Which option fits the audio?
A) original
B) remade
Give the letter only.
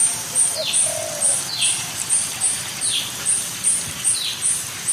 B